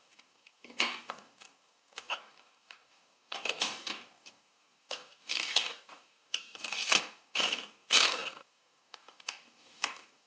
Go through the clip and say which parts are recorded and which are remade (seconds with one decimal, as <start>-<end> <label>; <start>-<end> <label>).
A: 0.0-10.3 remade